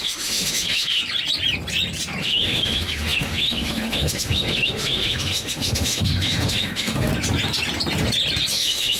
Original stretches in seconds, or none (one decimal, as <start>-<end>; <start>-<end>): 1.0-2.2; 7.1-8.5

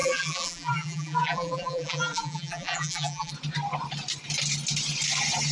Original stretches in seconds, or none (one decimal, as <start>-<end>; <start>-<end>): 3.3-5.5